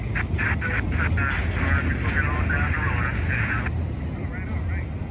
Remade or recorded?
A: recorded